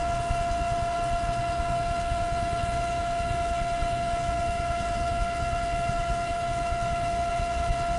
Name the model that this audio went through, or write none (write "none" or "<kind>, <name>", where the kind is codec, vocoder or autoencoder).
codec, HILCodec